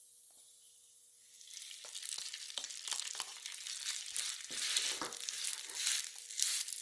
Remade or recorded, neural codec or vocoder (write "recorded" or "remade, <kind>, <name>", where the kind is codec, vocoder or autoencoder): recorded